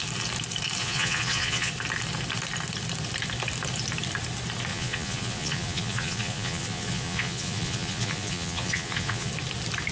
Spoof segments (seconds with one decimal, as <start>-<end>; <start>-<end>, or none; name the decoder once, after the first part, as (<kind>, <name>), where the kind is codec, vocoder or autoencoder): 0.8-1.7 (vocoder, Vocos); 4.7-9.3

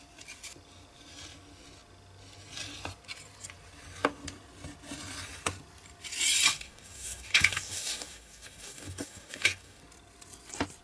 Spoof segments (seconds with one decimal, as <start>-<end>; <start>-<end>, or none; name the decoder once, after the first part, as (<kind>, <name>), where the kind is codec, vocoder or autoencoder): 6.5-9.8 (codec, DAC)

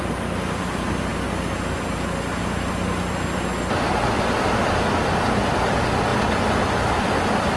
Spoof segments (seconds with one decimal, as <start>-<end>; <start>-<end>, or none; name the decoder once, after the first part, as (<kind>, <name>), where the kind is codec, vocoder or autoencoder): none

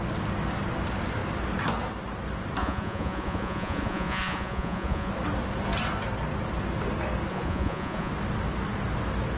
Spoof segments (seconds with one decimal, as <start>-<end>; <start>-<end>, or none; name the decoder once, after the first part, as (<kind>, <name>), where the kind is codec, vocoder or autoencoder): 2.6-5.1 (vocoder, Vocos); 7.3-8.1

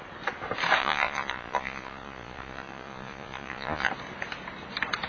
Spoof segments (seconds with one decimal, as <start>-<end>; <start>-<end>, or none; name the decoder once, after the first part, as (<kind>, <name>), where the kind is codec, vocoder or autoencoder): 0.8-3.9 (vocoder, Vocos)

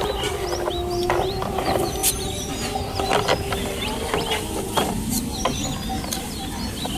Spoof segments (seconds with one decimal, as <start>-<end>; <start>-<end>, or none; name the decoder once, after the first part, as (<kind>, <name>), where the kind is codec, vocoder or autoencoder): none

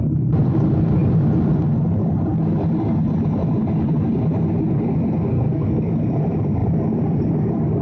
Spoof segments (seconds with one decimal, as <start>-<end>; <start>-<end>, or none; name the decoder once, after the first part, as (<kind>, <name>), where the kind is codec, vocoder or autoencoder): 5.3-5.9 (codec, SNAC)

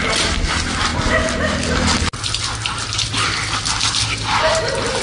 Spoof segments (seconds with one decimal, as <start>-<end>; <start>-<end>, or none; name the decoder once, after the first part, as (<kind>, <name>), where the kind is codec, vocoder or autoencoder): none